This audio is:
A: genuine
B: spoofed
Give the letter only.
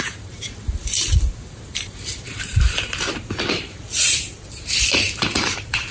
B